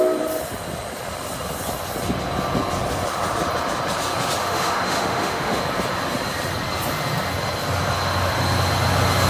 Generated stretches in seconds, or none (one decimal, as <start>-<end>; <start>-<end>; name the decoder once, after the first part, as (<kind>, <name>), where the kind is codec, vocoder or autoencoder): 4.4-5.6 (autoencoder, DAC-VAE)